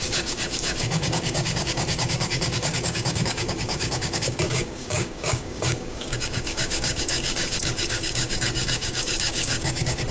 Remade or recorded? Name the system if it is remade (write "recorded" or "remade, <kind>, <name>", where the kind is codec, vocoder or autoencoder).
remade, codec, DAC